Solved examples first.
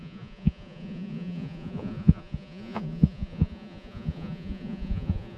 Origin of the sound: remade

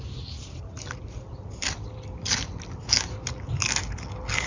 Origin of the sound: recorded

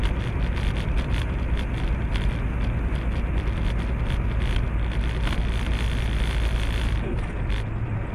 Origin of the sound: recorded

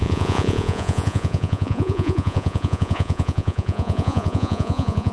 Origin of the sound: remade